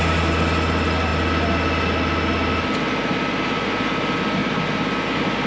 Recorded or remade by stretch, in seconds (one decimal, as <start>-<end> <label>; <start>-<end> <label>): 0.0-5.5 recorded